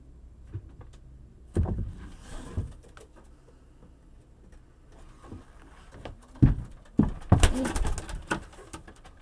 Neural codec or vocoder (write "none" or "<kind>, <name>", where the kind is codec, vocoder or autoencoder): none